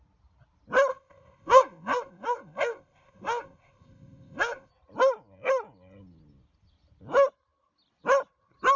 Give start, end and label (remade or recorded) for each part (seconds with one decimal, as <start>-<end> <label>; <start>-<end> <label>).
0.0-0.9 recorded; 0.9-4.7 remade; 4.7-8.8 recorded